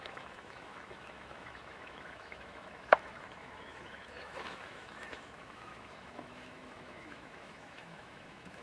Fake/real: fake